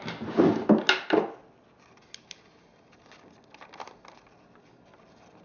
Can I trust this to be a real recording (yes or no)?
yes